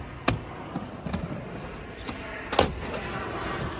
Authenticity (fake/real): real